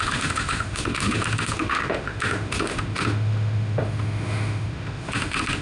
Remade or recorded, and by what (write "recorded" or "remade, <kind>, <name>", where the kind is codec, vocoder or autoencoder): remade, autoencoder, DAC-VAE